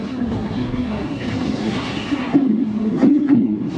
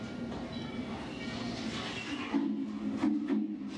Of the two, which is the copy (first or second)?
first